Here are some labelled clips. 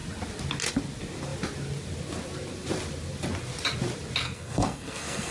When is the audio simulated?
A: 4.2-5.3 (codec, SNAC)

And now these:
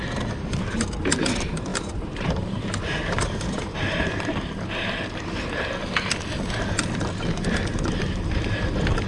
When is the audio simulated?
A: 1.7-5.4 (vocoder, BigVGAN v2); 7.7-8.7

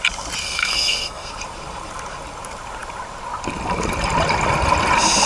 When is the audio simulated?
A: 0.4-1.3 (codec, SNAC)